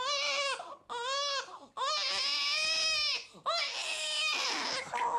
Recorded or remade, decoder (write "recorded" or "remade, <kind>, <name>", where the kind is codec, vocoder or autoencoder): recorded